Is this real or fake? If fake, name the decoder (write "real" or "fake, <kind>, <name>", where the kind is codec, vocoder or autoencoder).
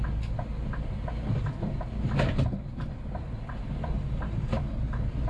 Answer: real